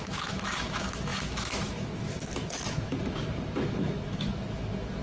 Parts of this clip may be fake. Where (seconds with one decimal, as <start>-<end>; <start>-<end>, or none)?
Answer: 0.0-5.0